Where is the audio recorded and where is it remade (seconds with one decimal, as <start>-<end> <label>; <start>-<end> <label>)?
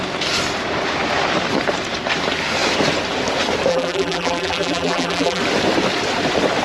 0.0-3.7 recorded; 3.7-5.4 remade; 5.4-6.6 recorded